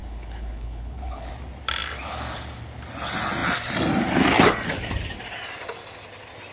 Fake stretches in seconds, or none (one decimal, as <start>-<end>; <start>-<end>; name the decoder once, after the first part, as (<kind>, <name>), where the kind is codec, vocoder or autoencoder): 0.0-1.3 (codec, HILCodec)